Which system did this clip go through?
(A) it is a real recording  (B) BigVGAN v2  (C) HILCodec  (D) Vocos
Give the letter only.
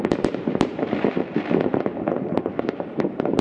B